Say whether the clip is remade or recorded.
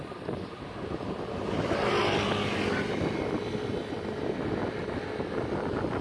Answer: recorded